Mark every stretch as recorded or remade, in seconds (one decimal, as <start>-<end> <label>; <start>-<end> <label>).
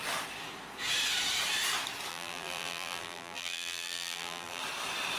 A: 0.0-2.1 recorded; 2.1-4.6 remade; 4.6-5.2 recorded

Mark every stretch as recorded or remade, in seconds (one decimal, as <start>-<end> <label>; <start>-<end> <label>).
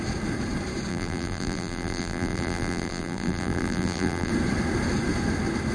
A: 0.0-0.9 recorded; 0.9-4.3 remade; 4.3-5.7 recorded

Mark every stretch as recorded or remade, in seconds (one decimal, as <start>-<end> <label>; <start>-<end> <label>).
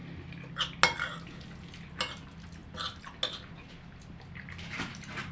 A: 0.0-0.5 remade; 0.5-5.3 recorded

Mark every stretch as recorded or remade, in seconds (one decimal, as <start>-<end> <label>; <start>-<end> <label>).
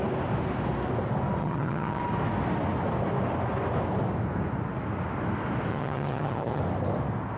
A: 0.0-1.4 recorded; 1.4-2.0 remade; 2.0-5.7 recorded; 5.7-6.6 remade; 6.6-7.4 recorded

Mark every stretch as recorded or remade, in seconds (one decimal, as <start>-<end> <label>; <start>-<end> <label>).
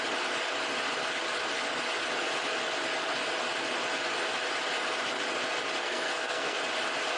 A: 0.0-5.8 recorded; 5.8-6.6 remade; 6.6-7.2 recorded